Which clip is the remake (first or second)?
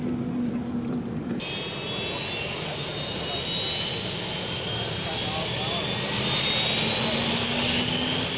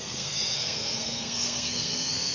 second